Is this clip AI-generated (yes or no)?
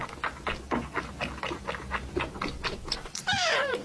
no